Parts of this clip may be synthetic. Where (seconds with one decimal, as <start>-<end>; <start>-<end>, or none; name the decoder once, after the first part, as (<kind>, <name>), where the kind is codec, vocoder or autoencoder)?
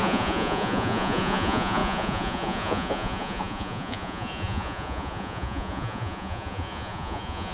0.0-7.5 (vocoder, Vocos)